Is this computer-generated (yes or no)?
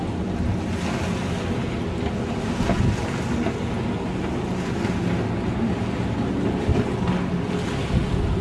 no